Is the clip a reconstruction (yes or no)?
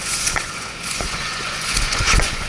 yes